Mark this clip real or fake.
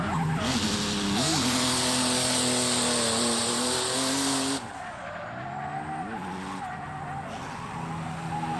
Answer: real